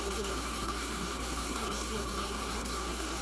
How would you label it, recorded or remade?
remade